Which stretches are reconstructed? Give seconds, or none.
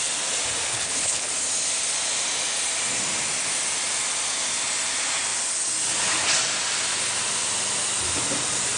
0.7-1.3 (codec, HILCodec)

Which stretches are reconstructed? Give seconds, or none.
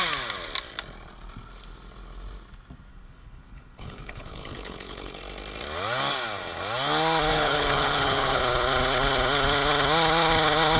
2.9-5.2 (codec, HILCodec); 7.3-8.4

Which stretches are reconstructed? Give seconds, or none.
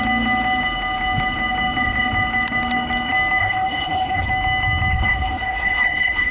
3.4-4.3 (codec, HILCodec); 4.9-6.3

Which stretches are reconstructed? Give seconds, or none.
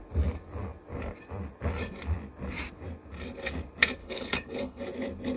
4.0-4.8 (codec, HILCodec)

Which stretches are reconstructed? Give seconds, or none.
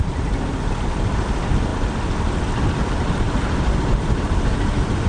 none